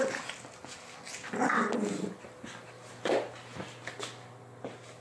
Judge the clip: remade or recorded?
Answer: recorded